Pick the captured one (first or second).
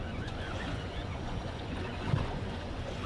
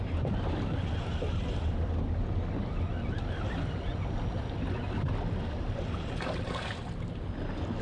second